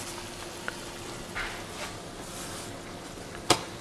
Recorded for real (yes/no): yes